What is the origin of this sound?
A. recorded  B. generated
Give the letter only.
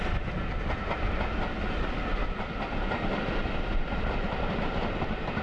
A